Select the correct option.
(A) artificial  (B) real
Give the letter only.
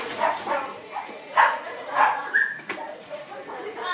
A